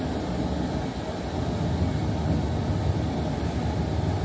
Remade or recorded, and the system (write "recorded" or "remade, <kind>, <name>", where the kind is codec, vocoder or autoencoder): recorded